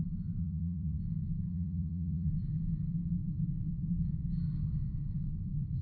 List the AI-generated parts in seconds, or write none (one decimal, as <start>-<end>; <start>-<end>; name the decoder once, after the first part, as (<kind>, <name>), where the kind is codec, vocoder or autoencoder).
0.4-1.0 (vocoder, Vocos); 1.5-2.3